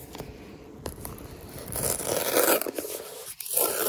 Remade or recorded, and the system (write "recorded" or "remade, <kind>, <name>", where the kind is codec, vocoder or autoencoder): remade, vocoder, BigVGAN v2